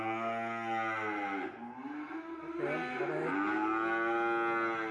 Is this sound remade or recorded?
recorded